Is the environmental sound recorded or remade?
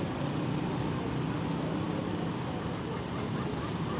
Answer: recorded